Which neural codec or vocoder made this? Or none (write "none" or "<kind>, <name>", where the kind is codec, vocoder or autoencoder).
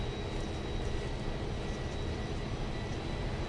none